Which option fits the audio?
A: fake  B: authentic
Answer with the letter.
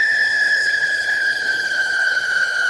A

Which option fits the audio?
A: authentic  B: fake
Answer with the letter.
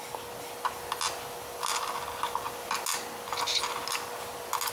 A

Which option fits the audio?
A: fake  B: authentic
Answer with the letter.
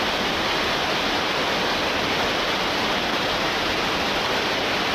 B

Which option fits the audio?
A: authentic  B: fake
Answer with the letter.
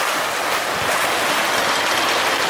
A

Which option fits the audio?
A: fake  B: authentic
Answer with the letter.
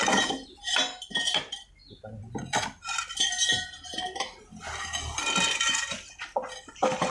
B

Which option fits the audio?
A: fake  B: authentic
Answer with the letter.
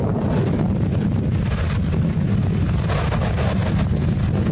B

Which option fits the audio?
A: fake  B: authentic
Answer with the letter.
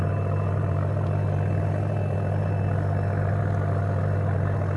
B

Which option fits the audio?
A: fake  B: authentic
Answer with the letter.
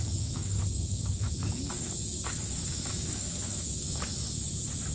A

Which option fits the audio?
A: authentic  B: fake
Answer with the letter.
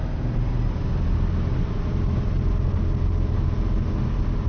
A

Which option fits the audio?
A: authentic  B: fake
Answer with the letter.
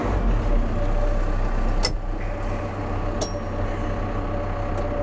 A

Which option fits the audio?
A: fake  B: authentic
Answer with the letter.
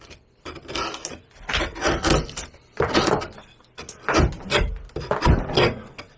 B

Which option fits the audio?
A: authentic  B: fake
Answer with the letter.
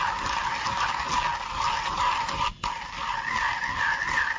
A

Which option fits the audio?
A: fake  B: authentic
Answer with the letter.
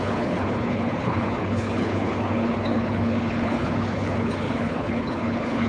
A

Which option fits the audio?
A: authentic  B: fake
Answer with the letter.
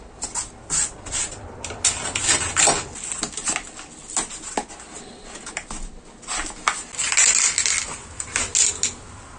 A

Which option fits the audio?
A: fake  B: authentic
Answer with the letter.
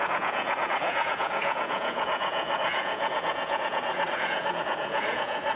A